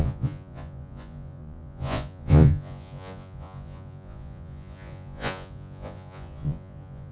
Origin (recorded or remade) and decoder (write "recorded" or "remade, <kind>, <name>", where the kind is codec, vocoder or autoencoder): remade, vocoder, Vocos